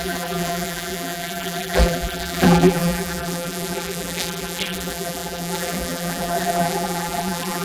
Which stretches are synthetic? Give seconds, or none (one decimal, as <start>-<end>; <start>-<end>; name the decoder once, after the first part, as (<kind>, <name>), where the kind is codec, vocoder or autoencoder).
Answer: 0.0-7.6 (vocoder, BigVGAN v2)